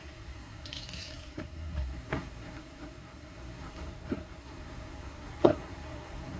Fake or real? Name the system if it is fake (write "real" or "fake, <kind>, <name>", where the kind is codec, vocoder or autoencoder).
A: fake, codec, SNAC